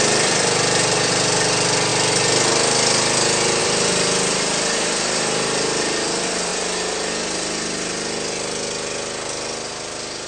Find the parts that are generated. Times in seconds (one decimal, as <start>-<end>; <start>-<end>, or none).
0.0-1.9; 3.6-6.5